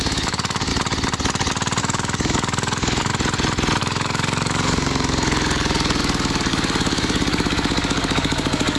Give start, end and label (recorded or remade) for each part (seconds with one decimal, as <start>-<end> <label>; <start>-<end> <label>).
0.0-0.7 remade; 0.7-1.8 recorded; 1.8-3.1 remade; 3.1-3.8 recorded; 3.8-8.8 remade